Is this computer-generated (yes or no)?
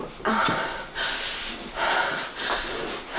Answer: no